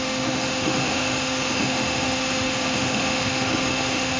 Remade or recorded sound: remade